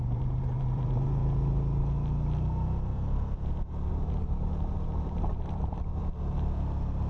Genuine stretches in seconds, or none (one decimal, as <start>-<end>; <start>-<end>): 1.2-3.9; 6.0-7.1